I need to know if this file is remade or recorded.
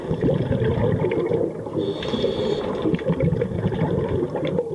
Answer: recorded